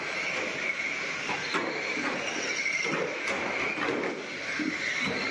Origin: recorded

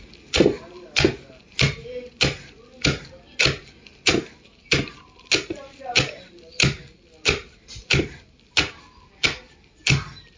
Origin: recorded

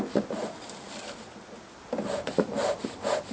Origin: recorded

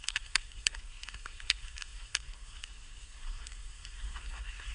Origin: remade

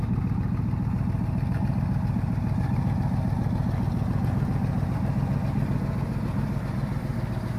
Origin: recorded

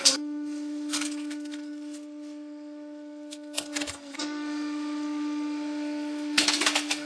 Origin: remade